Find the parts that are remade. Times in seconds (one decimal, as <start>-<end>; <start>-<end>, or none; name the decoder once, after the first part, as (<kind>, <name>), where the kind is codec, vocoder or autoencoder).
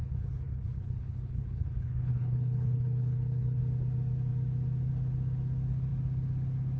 0.0-3.6 (codec, HILCodec)